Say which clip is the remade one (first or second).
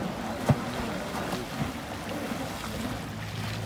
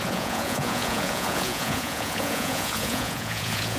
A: second